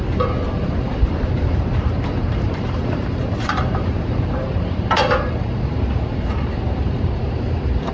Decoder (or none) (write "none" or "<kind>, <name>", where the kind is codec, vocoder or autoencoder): vocoder, BigVGAN v2